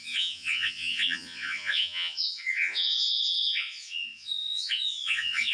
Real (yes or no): no